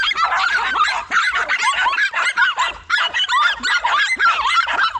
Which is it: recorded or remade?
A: recorded